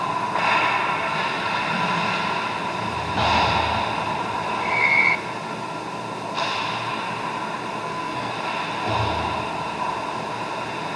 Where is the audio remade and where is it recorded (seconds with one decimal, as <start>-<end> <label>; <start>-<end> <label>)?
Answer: 0.0-7.8 recorded; 7.8-8.3 remade; 8.3-11.0 recorded